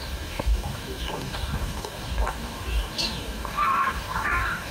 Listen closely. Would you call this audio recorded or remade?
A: remade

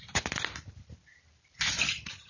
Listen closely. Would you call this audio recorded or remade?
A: recorded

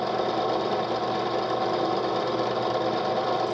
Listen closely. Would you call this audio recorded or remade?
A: recorded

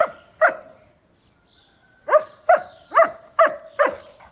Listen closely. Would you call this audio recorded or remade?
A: recorded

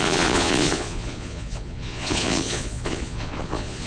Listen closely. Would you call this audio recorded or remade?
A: remade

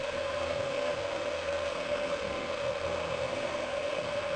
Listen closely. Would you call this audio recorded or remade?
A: remade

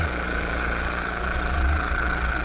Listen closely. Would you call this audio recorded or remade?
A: remade